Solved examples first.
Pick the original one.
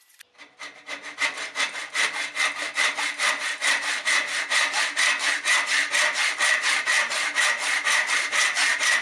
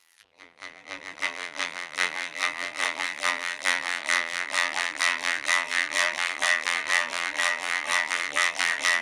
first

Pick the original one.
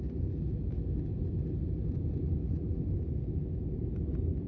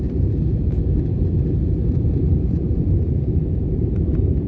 first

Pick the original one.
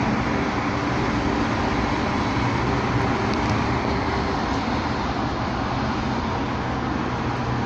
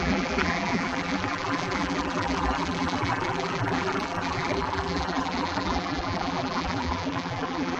first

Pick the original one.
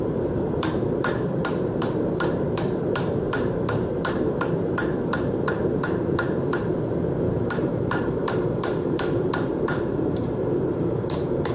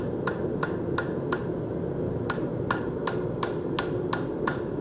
second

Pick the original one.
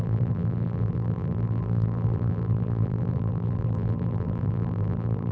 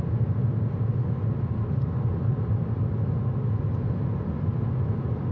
second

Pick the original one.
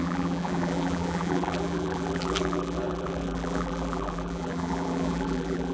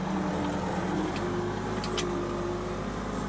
second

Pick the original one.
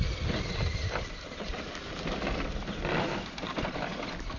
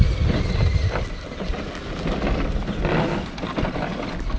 second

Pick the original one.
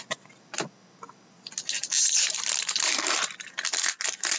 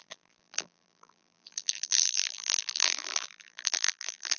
first